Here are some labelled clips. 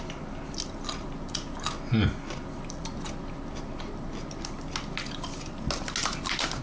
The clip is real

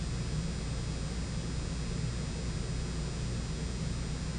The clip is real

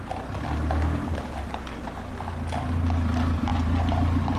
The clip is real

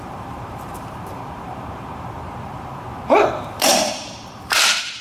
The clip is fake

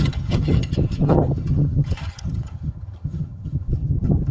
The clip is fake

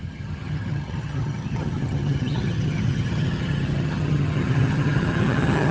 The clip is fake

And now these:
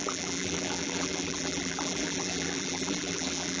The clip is fake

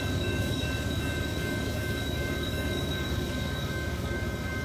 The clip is fake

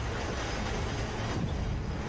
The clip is real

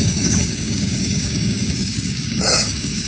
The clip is fake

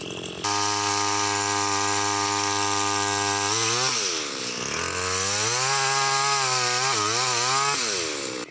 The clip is real